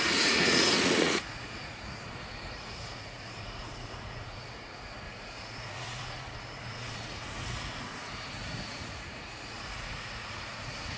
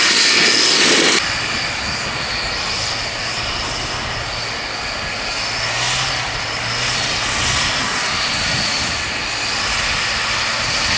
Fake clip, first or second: first